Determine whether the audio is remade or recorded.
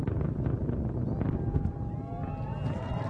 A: recorded